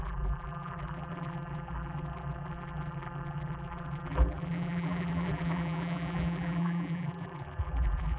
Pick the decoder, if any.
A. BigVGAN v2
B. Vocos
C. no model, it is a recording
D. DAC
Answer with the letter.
A